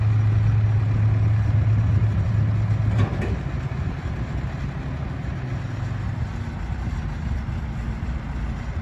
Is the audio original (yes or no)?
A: yes